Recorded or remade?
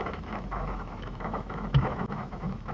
remade